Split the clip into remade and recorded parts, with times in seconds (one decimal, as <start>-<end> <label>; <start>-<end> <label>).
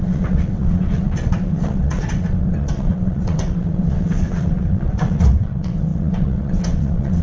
0.0-7.2 remade